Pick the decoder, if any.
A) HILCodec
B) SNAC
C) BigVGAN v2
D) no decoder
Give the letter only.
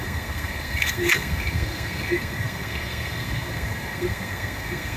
B